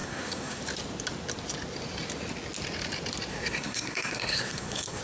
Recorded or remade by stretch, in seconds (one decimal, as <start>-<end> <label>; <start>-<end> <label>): 0.0-0.6 remade; 0.6-3.3 recorded; 3.3-5.0 remade